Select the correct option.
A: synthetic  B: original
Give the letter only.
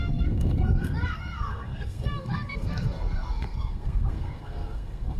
A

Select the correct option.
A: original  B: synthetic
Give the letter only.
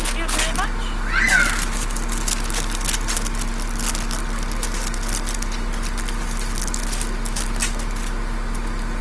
A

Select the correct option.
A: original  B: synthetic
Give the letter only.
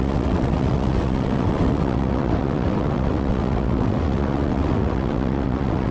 B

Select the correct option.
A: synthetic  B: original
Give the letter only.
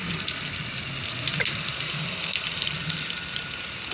B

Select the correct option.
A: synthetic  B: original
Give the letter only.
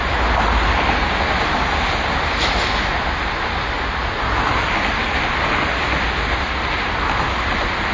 B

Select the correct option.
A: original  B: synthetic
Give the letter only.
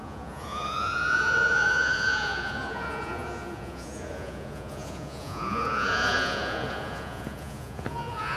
B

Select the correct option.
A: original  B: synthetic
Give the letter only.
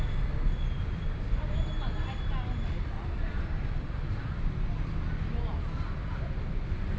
A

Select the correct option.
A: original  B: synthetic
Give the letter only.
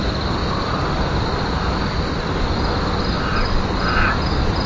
A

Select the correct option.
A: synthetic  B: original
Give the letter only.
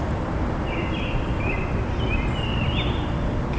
A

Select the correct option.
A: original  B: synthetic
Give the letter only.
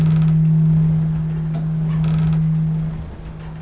A